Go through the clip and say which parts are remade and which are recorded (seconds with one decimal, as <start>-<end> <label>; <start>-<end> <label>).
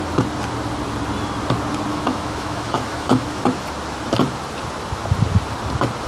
0.0-1.9 recorded; 1.9-3.4 remade; 3.4-6.1 recorded